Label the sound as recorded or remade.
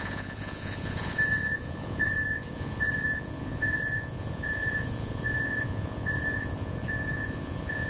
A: remade